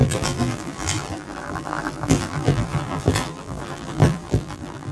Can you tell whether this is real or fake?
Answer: fake